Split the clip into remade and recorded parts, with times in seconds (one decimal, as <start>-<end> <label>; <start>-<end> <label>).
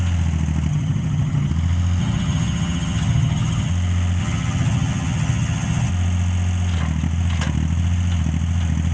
0.0-0.7 recorded; 0.7-1.5 remade; 1.5-2.0 recorded; 2.0-3.7 remade; 3.7-4.2 recorded; 4.2-5.9 remade; 5.9-8.9 recorded